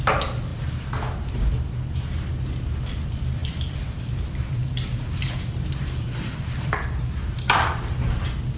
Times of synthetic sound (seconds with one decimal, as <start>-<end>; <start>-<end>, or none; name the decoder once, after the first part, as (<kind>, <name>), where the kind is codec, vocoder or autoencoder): 3.4-8.2 (vocoder, BigVGAN v2)